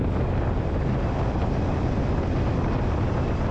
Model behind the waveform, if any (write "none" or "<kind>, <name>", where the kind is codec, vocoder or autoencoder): none